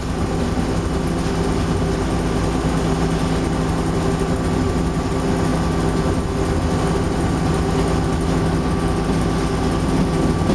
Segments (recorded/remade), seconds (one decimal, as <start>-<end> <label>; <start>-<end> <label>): 0.0-10.5 recorded